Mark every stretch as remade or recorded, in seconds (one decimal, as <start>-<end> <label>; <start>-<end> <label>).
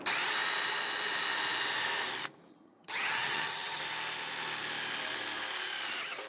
0.0-2.5 recorded; 2.5-3.8 remade; 3.8-6.3 recorded